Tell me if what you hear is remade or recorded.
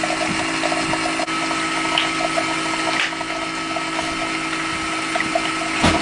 recorded